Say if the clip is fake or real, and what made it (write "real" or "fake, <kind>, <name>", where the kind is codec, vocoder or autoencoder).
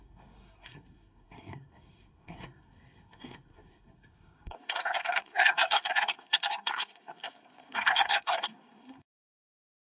fake, codec, SNAC